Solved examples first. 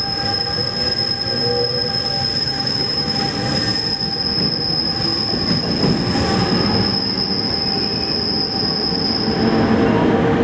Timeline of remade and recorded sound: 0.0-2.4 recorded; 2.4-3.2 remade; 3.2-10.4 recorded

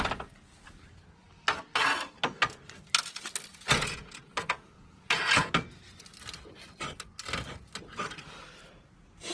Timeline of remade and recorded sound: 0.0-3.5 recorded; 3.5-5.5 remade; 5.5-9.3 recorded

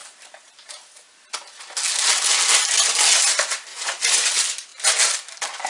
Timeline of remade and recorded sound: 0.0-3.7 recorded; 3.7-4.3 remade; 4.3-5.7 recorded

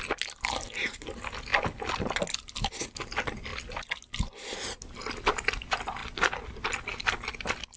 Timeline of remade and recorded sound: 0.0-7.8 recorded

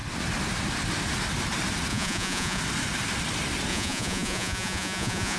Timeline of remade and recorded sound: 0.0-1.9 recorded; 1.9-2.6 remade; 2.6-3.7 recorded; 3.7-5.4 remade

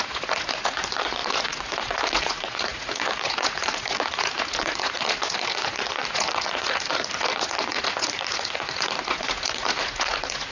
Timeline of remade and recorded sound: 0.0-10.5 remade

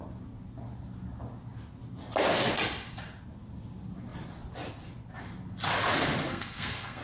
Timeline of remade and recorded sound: 0.0-6.3 recorded; 6.3-7.0 remade

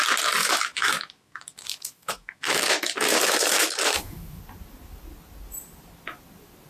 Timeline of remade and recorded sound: 0.0-0.4 recorded; 0.4-4.4 remade; 4.4-6.7 recorded